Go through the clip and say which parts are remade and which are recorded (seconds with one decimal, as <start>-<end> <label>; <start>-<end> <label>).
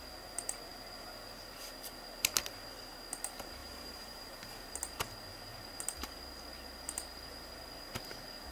0.0-3.6 recorded; 3.6-4.5 remade; 4.5-8.5 recorded